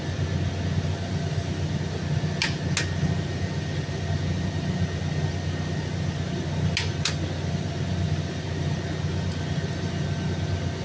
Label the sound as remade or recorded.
recorded